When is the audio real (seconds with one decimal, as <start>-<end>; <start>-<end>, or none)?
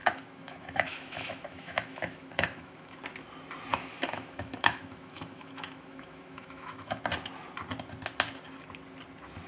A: 3.0-3.7; 7.0-9.5